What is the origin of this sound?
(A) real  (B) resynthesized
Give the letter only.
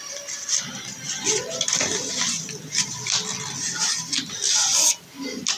A